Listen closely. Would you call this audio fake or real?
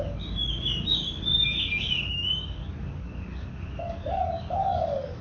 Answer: fake